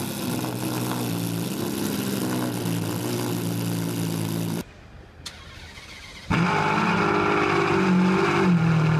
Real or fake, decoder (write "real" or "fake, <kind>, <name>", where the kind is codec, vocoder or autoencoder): real